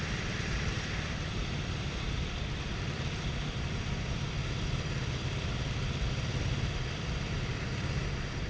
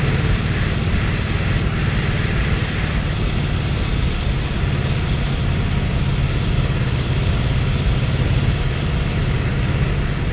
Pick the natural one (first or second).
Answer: second